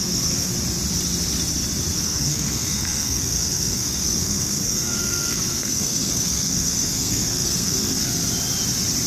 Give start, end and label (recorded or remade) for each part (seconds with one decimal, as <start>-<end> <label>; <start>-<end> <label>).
0.0-0.5 remade; 0.5-2.0 recorded; 2.0-8.1 remade; 8.1-9.1 recorded

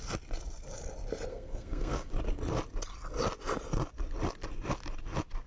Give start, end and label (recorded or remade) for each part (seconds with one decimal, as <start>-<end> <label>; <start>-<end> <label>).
0.0-1.3 recorded; 1.3-2.1 remade; 2.1-5.5 recorded

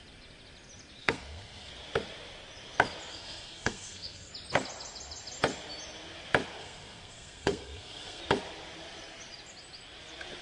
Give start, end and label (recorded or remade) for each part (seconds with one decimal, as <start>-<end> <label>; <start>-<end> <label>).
0.0-1.0 recorded; 1.0-1.7 remade; 1.7-3.1 recorded; 3.1-4.3 remade; 4.3-6.6 recorded; 6.6-8.2 remade; 8.2-10.4 recorded

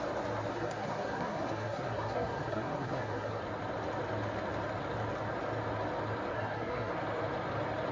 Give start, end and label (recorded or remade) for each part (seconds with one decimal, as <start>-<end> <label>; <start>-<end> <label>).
0.0-0.5 recorded; 0.5-3.4 remade; 3.4-6.3 recorded; 6.3-6.9 remade; 6.9-7.9 recorded

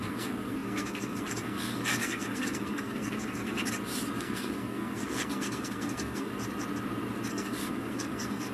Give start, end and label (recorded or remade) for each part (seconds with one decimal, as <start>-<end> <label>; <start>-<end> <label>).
0.0-3.6 remade; 3.6-4.2 recorded; 4.2-6.3 remade; 6.3-7.3 recorded; 7.3-8.5 remade